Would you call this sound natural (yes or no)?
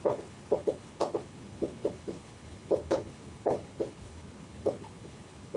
no